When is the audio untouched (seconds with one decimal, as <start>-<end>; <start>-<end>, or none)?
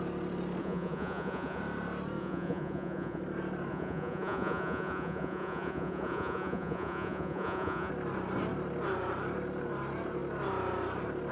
0.0-0.6; 1.6-2.2; 3.2-3.7; 7.9-11.3